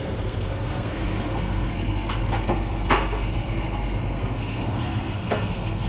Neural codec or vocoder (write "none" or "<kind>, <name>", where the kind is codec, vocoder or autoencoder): codec, SNAC